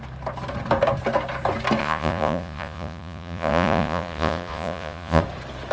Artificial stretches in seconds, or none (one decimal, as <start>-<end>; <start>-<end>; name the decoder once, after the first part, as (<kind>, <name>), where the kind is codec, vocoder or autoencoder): 1.8-5.2 (vocoder, Vocos)